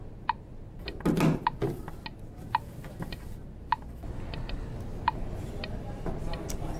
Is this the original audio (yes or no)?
yes